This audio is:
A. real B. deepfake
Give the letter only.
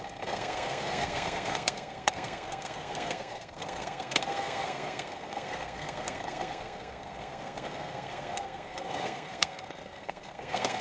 B